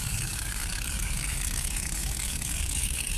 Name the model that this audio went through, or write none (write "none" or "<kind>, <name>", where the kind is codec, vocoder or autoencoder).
codec, DAC